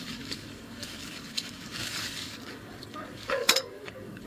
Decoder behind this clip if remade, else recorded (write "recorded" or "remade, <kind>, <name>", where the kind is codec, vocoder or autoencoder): remade, codec, DAC